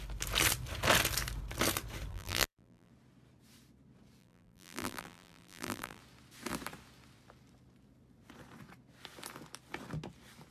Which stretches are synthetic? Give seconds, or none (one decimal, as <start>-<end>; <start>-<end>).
2.1-2.9; 4.2-6.0